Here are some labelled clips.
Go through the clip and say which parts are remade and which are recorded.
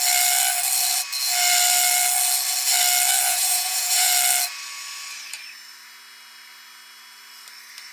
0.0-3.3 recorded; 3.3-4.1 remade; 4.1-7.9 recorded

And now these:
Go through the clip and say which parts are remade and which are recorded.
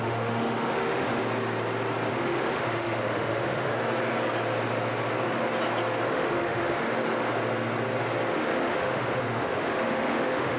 0.0-1.2 remade; 1.2-2.1 recorded; 2.1-3.7 remade; 3.7-6.1 recorded; 6.1-6.9 remade; 6.9-8.3 recorded; 8.3-10.6 remade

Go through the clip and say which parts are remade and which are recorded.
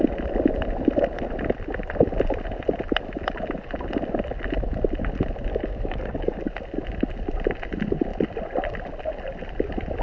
0.0-5.5 recorded; 5.5-6.4 remade; 6.4-10.0 recorded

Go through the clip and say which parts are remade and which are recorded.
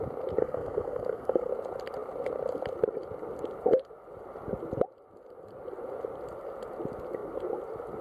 0.0-0.4 recorded; 0.4-1.5 remade; 1.5-8.0 recorded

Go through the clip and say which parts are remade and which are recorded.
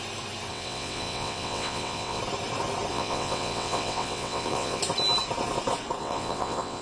0.0-0.5 recorded; 0.5-2.2 remade; 2.2-2.9 recorded; 2.9-4.8 remade; 4.8-6.0 recorded; 6.0-6.8 remade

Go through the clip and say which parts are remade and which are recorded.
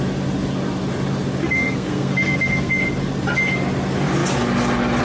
0.0-1.4 recorded; 1.4-2.7 remade; 2.7-5.0 recorded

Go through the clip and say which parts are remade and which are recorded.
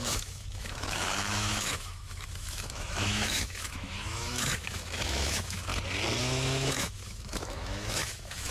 0.0-5.7 remade; 5.7-6.2 recorded; 6.2-8.5 remade